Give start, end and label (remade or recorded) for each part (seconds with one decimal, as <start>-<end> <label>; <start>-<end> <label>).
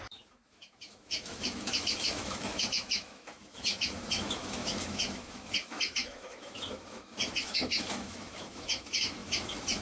0.0-9.8 remade